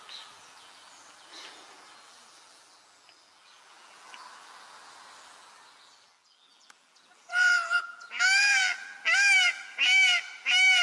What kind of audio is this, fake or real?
fake